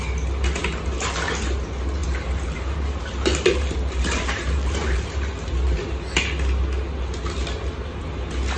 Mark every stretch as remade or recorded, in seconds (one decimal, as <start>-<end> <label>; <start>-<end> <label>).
0.0-2.0 recorded; 2.0-6.0 remade; 6.0-8.6 recorded